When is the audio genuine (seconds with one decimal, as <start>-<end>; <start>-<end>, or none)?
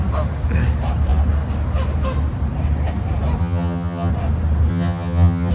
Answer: 0.0-3.4; 4.1-4.7